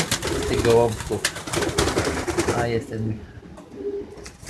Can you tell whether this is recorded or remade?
recorded